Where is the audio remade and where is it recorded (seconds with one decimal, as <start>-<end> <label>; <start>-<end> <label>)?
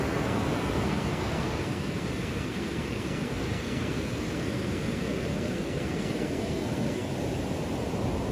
0.0-7.1 remade; 7.1-8.3 recorded